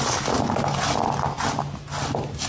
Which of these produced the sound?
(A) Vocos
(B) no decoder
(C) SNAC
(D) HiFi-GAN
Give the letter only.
B